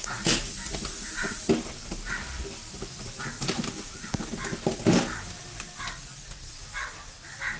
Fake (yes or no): no